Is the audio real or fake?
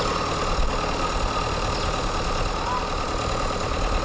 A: real